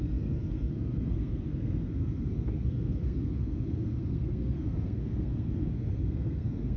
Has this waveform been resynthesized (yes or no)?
yes